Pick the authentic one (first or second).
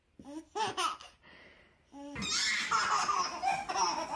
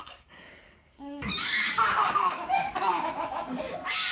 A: first